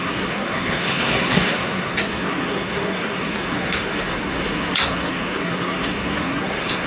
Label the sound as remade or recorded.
remade